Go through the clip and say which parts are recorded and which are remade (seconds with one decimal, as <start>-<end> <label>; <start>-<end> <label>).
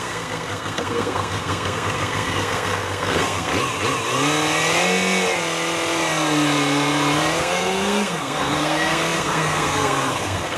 0.0-3.5 remade; 3.5-7.4 recorded; 7.4-10.6 remade